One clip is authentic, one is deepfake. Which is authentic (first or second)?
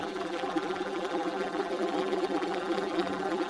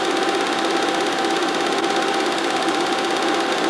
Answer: second